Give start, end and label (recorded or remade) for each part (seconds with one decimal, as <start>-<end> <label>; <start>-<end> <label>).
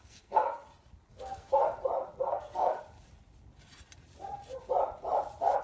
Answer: 0.0-0.4 remade; 0.4-1.1 recorded; 1.1-1.6 remade; 1.6-2.2 recorded; 2.2-2.7 remade; 2.7-5.6 recorded